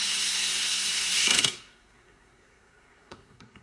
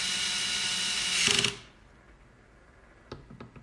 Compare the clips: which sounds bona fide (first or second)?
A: second